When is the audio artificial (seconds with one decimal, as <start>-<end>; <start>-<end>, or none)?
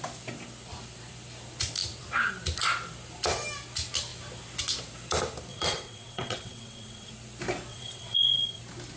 5.5-7.1; 7.7-8.6